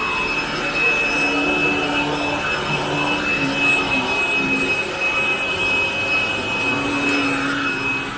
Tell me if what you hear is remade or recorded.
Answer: recorded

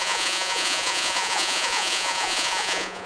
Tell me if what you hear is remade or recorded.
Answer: remade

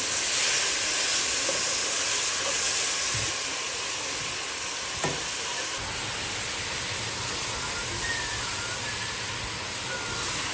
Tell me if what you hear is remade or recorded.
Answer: recorded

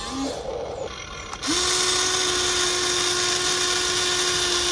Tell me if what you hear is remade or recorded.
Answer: recorded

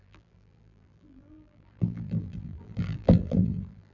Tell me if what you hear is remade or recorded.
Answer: remade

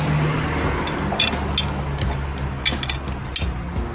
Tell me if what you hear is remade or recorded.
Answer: recorded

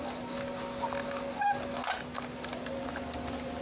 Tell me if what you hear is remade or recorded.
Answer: recorded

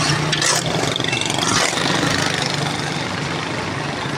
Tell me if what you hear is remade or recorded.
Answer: recorded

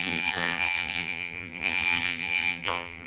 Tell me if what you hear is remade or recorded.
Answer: remade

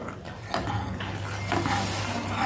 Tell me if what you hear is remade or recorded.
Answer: recorded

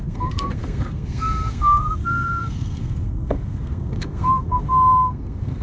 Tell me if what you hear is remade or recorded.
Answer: remade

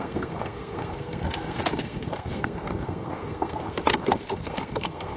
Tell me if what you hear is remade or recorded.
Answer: remade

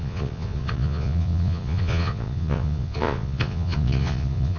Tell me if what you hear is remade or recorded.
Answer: remade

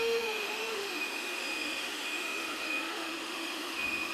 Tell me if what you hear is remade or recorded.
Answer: remade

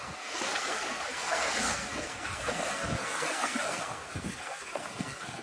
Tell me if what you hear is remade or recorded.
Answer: remade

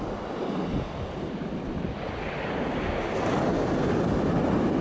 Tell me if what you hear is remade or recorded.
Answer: recorded